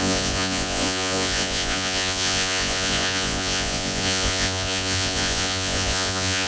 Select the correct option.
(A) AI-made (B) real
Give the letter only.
A